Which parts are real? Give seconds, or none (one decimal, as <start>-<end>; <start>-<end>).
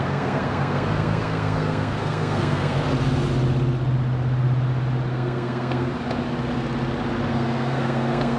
2.8-5.1; 5.9-7.3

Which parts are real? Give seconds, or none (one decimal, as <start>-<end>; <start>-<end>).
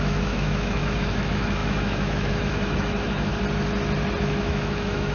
3.3-4.2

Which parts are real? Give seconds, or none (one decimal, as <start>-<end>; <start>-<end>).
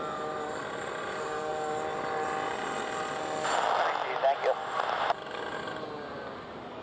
0.0-6.8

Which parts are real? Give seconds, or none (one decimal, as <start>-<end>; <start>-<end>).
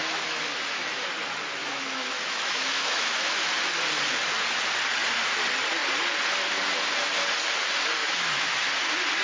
1.1-1.6; 3.5-8.0; 8.7-9.2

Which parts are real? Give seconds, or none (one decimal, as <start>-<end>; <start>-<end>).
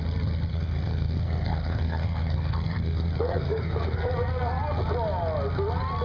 0.0-0.5; 4.1-6.0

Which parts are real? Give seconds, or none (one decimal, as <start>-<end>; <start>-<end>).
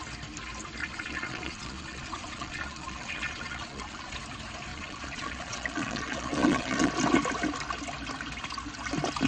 0.0-0.8; 4.2-4.7; 6.9-9.3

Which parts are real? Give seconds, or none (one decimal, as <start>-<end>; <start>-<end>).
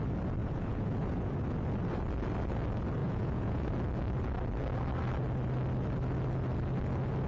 0.0-0.4; 1.3-3.0; 3.7-7.3